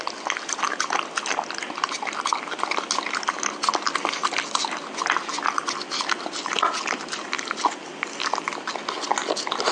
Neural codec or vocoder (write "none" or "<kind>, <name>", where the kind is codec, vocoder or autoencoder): none